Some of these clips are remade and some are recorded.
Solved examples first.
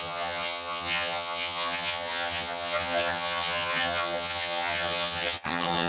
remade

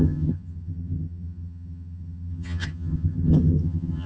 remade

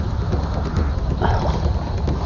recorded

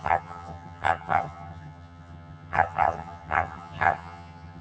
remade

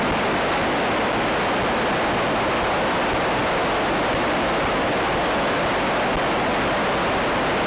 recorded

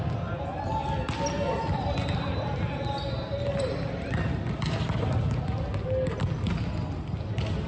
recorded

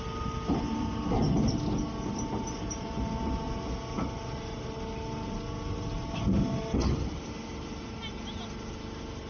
recorded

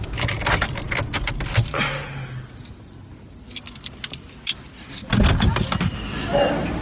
recorded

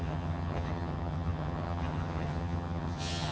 remade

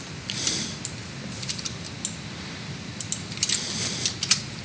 recorded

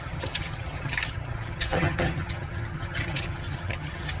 remade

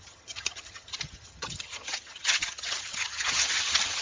remade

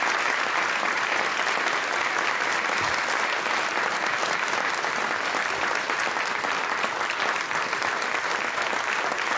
recorded